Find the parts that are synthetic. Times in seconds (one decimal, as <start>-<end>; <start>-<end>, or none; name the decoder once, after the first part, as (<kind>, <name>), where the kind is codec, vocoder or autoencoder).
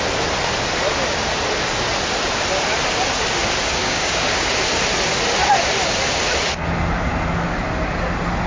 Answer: 3.8-4.5 (codec, DAC)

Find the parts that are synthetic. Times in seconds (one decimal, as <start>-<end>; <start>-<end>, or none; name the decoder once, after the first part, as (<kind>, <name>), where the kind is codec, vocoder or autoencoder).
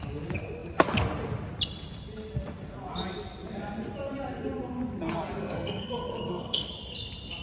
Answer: 5.4-6.7 (codec, SNAC)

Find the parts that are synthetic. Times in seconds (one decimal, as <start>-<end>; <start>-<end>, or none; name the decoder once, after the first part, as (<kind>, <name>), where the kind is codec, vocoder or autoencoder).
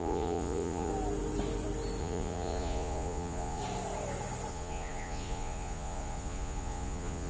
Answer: 0.0-0.9 (vocoder, Vocos); 2.0-3.6; 4.5-7.3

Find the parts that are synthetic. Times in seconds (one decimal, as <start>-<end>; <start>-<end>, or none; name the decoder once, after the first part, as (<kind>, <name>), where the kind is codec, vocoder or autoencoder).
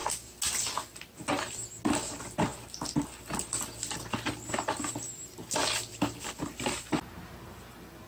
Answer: none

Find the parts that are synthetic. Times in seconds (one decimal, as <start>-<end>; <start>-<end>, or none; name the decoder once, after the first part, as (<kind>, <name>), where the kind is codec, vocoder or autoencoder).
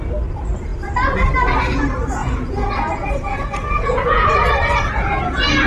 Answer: 2.2-4.3 (vocoder, Vocos)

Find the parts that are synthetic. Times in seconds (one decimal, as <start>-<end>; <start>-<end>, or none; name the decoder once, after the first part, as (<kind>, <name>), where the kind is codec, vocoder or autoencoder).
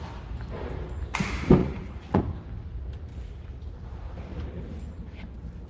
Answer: 1.6-2.2 (vocoder, Vocos)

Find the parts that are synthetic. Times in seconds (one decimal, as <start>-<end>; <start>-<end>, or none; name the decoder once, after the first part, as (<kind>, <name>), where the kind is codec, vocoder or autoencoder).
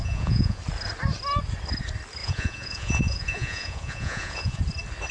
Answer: 0.0-0.6 (vocoder, Vocos); 2.2-4.6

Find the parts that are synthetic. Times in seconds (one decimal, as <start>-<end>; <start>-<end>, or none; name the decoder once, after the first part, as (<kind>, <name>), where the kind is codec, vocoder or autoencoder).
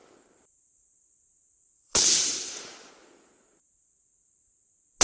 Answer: 0.0-2.9 (vocoder, BigVGAN v2)